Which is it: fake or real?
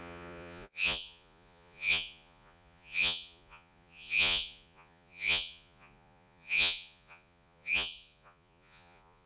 fake